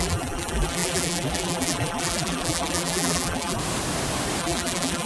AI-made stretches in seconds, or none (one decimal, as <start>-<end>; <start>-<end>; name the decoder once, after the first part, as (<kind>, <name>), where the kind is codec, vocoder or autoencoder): 0.0-3.6 (vocoder, BigVGAN v2); 4.4-5.1